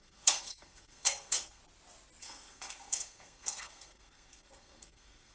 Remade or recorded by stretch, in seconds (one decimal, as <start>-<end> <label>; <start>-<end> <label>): 0.0-1.6 remade; 1.6-2.2 recorded; 2.2-5.3 remade